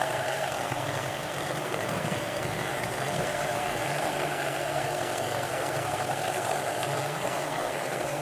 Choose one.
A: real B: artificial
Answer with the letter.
B